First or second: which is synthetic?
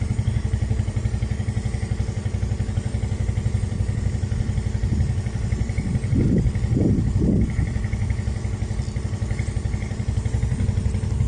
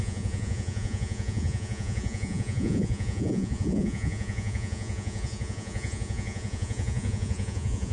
second